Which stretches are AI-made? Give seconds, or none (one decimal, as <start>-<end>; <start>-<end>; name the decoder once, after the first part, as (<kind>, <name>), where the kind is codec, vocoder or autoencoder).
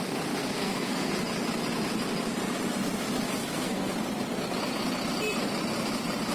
0.4-1.1 (codec, SNAC); 3.4-3.9